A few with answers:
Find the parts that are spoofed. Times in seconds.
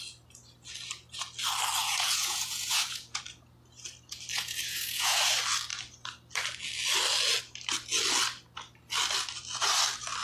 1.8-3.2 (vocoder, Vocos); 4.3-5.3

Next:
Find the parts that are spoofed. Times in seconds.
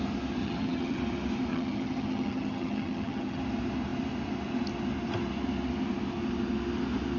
0.4-1.0 (vocoder, HiFi-GAN); 1.5-3.4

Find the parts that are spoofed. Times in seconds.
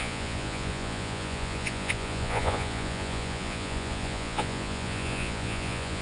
0.0-6.0 (vocoder, Vocos)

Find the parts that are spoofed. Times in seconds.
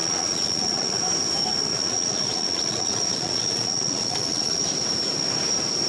0.0-1.0 (vocoder, Vocos); 1.7-4.6